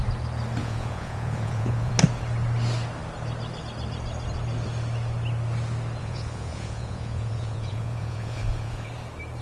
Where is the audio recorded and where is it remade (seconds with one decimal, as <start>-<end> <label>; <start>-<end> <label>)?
0.0-0.6 recorded; 0.6-1.9 remade; 1.9-6.0 recorded; 6.0-8.9 remade; 8.9-9.4 recorded